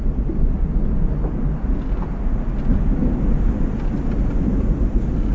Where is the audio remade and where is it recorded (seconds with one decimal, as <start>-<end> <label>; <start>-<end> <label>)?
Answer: 0.0-5.3 recorded